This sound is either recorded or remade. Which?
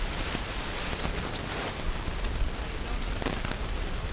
recorded